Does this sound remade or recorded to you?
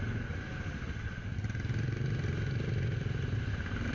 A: recorded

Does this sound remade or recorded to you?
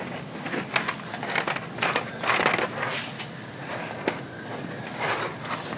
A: recorded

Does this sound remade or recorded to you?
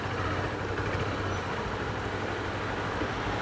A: recorded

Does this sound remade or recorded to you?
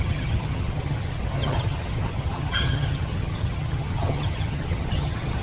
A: remade